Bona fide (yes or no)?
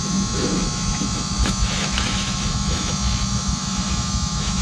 no